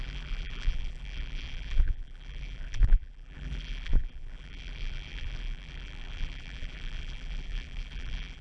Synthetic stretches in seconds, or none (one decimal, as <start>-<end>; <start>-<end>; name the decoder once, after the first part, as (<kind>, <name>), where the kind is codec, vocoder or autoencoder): 0.0-8.4 (vocoder, BigVGAN v2)